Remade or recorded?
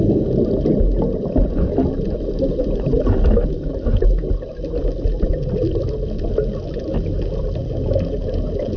recorded